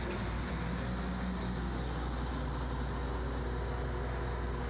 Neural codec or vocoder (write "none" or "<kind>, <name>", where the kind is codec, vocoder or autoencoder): none